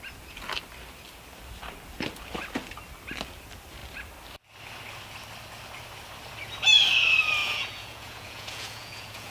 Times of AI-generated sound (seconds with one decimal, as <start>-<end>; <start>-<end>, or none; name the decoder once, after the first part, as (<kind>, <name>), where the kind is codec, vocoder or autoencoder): 7.4-9.3 (vocoder, Vocos)